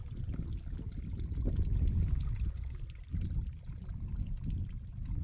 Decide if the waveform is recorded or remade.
recorded